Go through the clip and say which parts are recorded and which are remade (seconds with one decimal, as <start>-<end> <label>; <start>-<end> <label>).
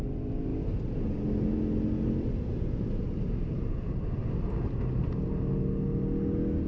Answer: 0.0-6.7 recorded